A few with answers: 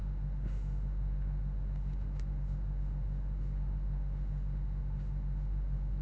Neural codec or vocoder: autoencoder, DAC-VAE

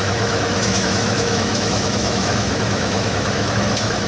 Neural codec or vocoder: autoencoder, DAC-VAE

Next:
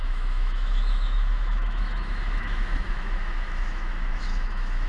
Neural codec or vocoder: autoencoder, DAC-VAE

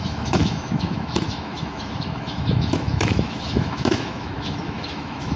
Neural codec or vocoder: autoencoder, DAC-VAE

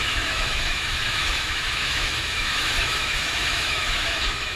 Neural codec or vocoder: autoencoder, DAC-VAE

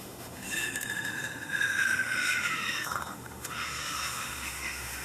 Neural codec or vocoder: autoencoder, DAC-VAE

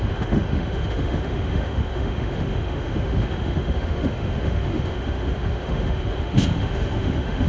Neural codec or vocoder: autoencoder, DAC-VAE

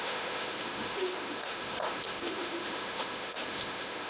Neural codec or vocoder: autoencoder, DAC-VAE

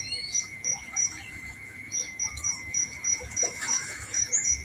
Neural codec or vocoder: autoencoder, DAC-VAE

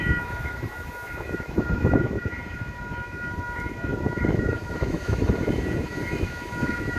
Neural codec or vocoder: autoencoder, DAC-VAE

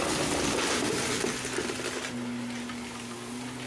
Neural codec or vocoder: none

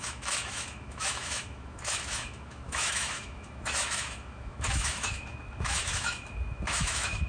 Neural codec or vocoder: autoencoder, DAC-VAE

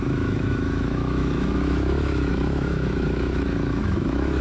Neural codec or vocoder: autoencoder, DAC-VAE